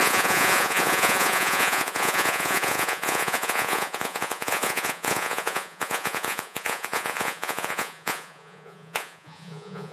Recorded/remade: remade